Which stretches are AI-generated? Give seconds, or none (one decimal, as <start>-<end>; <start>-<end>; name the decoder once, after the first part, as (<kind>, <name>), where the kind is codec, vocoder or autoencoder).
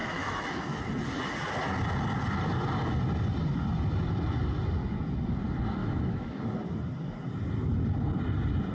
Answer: 0.0-0.8 (autoencoder, DAC-VAE); 5.8-6.4